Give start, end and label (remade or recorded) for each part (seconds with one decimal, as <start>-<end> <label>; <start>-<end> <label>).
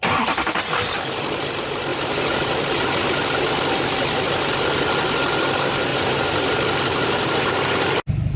0.0-1.9 recorded; 1.9-3.5 remade; 3.5-5.9 recorded; 5.9-7.5 remade; 7.5-8.4 recorded